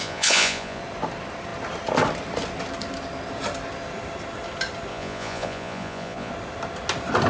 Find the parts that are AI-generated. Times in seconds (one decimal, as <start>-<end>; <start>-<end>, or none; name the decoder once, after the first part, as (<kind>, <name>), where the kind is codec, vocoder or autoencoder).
0.0-0.8 (vocoder, Vocos); 4.9-6.3